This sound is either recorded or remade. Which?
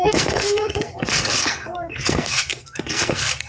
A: remade